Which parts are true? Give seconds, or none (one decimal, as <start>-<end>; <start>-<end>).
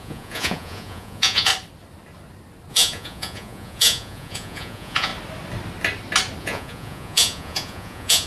1.5-2.7; 5.1-6.4